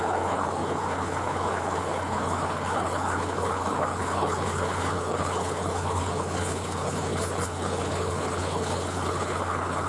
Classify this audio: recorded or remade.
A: remade